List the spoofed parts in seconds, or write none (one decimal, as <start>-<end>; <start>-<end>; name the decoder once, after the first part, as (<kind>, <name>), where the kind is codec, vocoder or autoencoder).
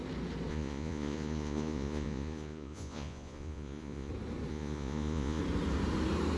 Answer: 0.5-4.1 (vocoder, Vocos); 4.5-5.4